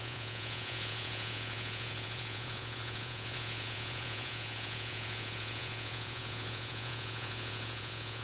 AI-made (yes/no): yes